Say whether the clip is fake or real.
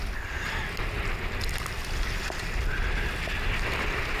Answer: real